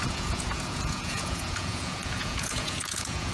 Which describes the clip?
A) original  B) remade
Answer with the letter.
B